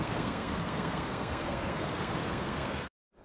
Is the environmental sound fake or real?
fake